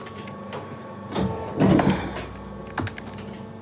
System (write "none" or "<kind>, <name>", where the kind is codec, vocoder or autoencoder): none